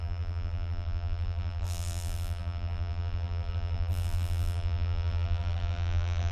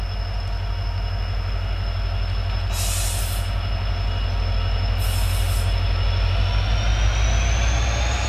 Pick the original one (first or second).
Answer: second